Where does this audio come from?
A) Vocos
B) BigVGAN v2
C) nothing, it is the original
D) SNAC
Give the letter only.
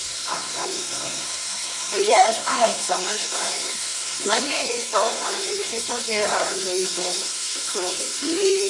D